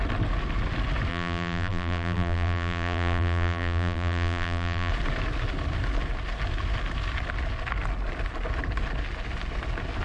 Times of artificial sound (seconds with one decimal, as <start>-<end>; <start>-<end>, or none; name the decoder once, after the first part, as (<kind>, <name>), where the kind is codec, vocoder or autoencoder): 1.1-4.9 (vocoder, BigVGAN v2)